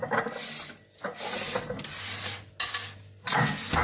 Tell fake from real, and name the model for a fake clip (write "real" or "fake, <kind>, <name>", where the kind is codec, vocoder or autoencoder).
real